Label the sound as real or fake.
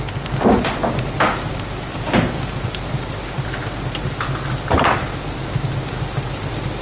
real